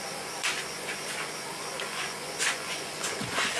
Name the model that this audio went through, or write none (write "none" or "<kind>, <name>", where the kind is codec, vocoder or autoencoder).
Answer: vocoder, Vocos